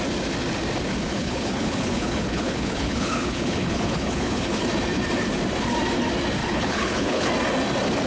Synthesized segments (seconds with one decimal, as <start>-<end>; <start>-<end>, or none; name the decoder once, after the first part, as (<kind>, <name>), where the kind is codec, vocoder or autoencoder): 1.1-4.6 (codec, HILCodec); 6.4-7.3